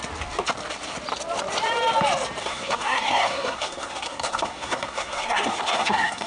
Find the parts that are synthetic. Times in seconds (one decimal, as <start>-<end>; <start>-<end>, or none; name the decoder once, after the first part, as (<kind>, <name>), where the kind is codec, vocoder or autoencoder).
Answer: 2.4-6.3 (codec, SNAC)

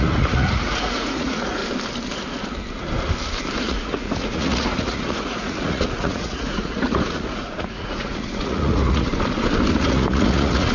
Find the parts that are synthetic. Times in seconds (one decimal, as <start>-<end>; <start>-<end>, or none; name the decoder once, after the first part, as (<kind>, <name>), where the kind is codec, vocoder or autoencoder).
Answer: 0.0-1.6 (vocoder, Vocos); 3.6-9.1; 9.7-10.7

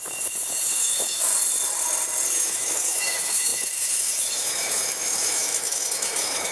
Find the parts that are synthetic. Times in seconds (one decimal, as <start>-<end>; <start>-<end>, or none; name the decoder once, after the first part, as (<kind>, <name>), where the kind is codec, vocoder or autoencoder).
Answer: 0.0-1.3 (autoencoder, DAC-VAE); 2.3-6.5

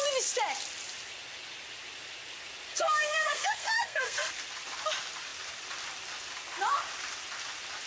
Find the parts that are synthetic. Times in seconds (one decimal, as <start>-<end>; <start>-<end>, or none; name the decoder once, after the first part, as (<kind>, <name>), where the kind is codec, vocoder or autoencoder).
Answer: 2.7-4.3 (codec, SNAC)